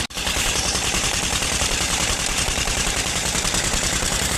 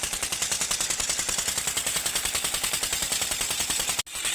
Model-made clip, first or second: first